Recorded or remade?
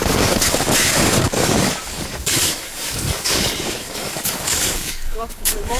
remade